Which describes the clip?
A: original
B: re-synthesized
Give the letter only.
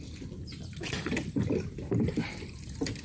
A